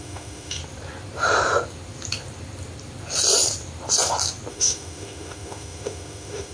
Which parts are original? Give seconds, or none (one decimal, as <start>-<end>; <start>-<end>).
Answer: 0.6-4.5